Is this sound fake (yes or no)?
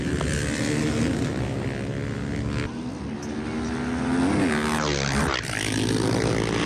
no